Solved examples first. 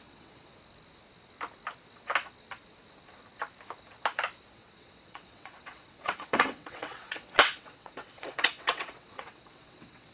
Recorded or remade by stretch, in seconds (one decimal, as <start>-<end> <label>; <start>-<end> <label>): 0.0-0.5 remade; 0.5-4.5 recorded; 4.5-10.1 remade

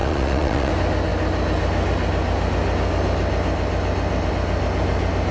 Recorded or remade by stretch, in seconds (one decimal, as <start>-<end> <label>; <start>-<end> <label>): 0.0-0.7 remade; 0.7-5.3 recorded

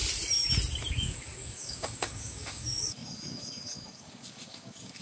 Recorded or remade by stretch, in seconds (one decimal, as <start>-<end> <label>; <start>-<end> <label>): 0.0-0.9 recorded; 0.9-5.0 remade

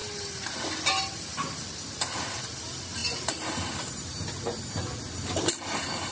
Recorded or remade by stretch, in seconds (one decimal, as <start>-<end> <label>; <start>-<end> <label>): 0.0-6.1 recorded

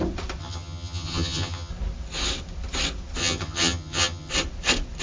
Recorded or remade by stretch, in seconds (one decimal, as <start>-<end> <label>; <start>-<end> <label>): 0.0-0.4 recorded; 0.4-1.7 remade; 1.7-3.2 recorded; 3.2-4.3 remade; 4.3-5.0 recorded

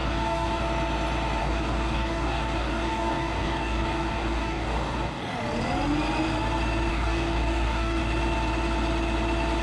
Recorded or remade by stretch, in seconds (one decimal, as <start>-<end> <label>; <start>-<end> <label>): 0.0-0.6 remade; 0.6-1.4 recorded; 1.4-5.2 remade; 5.2-6.9 recorded; 6.9-8.0 remade; 8.0-9.6 recorded

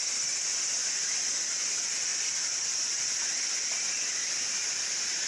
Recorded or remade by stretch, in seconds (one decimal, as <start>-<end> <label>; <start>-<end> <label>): 0.0-0.5 recorded; 0.5-1.4 remade; 1.4-2.1 recorded; 2.1-3.1 remade; 3.1-5.3 recorded

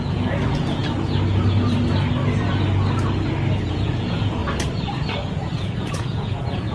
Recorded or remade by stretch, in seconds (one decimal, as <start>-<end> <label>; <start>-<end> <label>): 0.0-0.8 remade; 0.8-3.6 recorded; 3.6-4.4 remade; 4.4-5.3 recorded; 5.3-6.7 remade